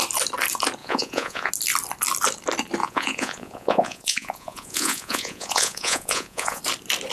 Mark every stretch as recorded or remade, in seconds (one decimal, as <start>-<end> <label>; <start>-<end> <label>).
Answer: 0.0-0.8 recorded; 0.8-1.5 remade; 1.5-2.8 recorded; 2.8-6.6 remade; 6.6-7.1 recorded